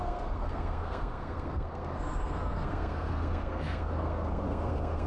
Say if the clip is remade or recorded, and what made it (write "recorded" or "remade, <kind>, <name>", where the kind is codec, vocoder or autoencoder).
remade, codec, SNAC